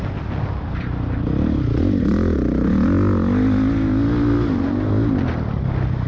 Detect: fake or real real